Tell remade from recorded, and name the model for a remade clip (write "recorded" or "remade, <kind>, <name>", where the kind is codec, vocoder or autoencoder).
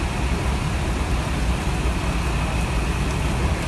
recorded